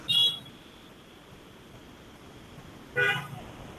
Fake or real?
real